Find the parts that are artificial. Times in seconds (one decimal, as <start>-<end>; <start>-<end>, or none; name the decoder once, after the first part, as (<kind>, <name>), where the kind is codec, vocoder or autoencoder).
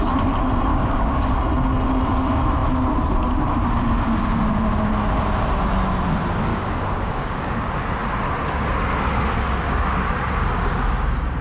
0.7-1.3 (codec, DAC); 6.5-7.5